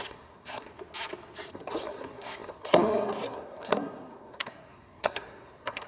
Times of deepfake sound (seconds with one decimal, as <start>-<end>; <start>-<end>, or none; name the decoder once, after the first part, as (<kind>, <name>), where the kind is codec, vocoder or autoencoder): 0.0-0.7 (codec, SNAC); 1.5-5.9